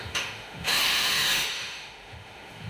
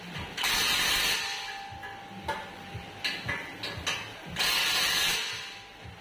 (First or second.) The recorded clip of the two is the second